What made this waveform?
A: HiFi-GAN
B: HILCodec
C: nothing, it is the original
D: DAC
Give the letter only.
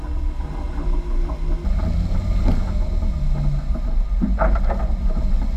C